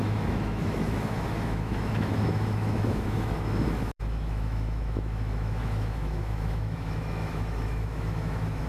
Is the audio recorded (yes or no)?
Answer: no